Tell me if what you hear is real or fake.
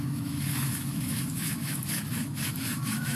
fake